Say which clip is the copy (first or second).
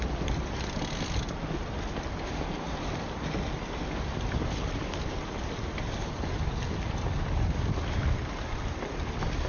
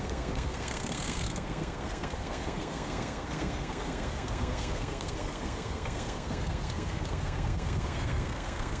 second